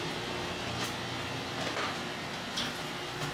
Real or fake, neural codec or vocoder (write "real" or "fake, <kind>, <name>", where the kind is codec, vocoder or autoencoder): real